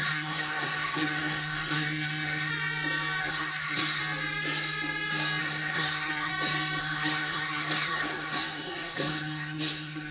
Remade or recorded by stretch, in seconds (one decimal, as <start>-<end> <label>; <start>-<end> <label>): 0.0-2.5 remade; 2.5-3.2 recorded; 3.2-4.0 remade; 4.0-5.4 recorded; 5.4-6.3 remade; 6.3-6.8 recorded; 6.8-10.1 remade